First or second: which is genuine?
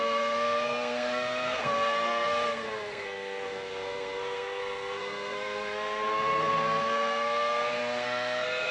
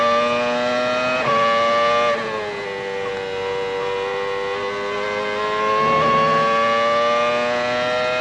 second